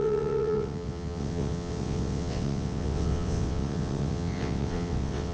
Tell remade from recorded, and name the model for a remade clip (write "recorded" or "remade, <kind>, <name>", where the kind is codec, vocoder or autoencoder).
remade, vocoder, WaveNeXt